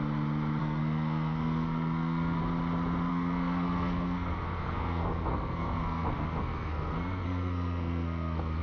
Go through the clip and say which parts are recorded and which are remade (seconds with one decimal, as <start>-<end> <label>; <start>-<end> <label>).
0.0-0.6 recorded; 0.6-2.4 remade; 2.4-3.1 recorded; 3.1-8.6 remade